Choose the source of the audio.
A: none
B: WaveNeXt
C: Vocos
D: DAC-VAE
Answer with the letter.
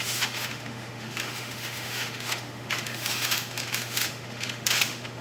D